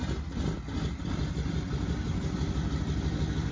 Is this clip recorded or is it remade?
recorded